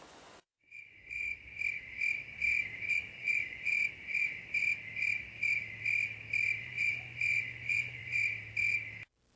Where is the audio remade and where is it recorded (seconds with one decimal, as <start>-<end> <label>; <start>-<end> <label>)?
0.0-1.3 remade; 1.3-2.9 recorded; 2.9-3.7 remade; 3.7-6.6 recorded; 6.6-8.2 remade; 8.2-9.4 recorded